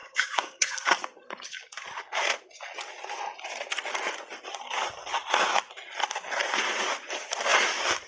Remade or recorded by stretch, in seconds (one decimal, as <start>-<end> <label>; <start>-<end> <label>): 0.0-0.6 remade; 0.6-8.1 recorded

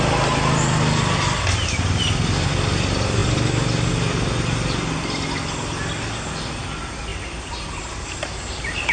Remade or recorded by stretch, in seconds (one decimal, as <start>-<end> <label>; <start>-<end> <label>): 0.0-8.9 recorded